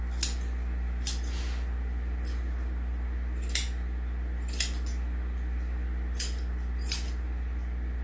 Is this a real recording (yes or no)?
yes